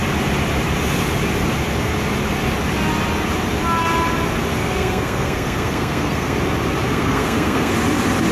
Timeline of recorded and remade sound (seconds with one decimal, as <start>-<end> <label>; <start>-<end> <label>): 0.0-4.6 recorded; 4.6-6.4 remade; 6.4-6.9 recorded; 6.9-7.7 remade; 7.7-8.3 recorded